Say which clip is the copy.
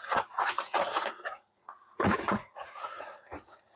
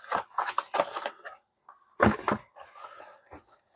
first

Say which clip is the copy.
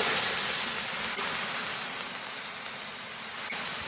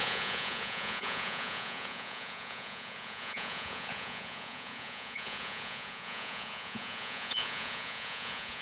second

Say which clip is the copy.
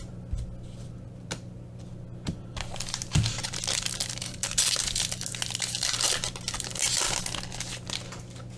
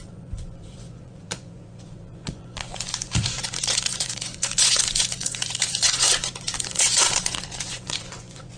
second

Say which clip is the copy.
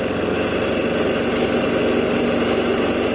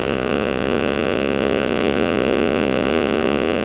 second